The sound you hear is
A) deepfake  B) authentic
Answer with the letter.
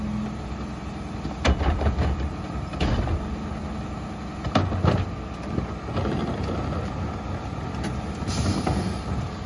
B